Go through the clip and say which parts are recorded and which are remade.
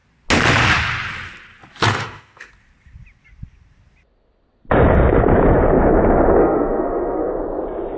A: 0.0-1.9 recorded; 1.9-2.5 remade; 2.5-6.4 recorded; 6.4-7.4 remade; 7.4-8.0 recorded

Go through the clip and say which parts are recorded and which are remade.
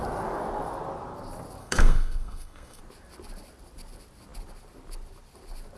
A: 0.0-1.6 recorded; 1.6-2.8 remade; 2.8-5.8 recorded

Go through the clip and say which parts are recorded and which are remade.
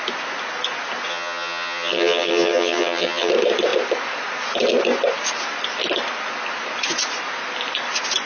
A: 0.0-1.1 recorded; 1.1-3.3 remade; 3.3-8.3 recorded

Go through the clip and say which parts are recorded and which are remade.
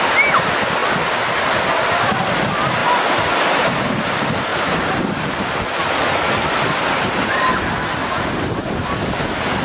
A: 0.0-4.5 recorded; 4.5-5.5 remade; 5.5-8.0 recorded; 8.0-8.6 remade; 8.6-9.6 recorded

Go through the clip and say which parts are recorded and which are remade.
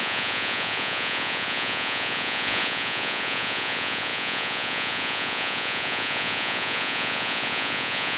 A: 0.0-8.2 remade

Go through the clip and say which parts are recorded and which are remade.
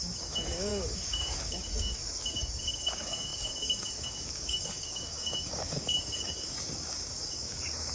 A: 0.0-7.9 remade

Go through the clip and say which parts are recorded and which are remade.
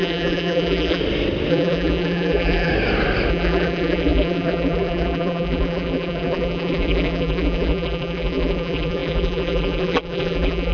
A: 0.0-1.0 remade; 1.0-1.5 recorded; 1.5-2.7 remade; 2.7-3.3 recorded; 3.3-10.7 remade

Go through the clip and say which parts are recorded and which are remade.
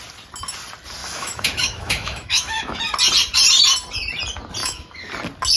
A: 0.0-1.0 recorded; 1.0-2.8 remade; 2.8-4.6 recorded; 4.6-5.1 remade; 5.1-5.6 recorded